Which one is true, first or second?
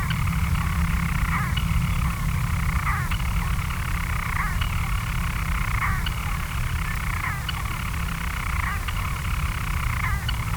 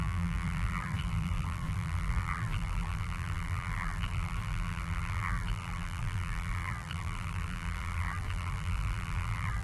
first